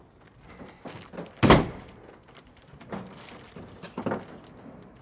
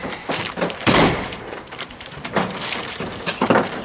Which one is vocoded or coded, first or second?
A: second